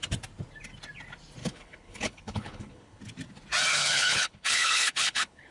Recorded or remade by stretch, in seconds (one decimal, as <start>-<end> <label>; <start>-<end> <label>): 0.0-1.4 recorded; 1.4-3.0 remade; 3.0-3.7 recorded; 3.7-5.5 remade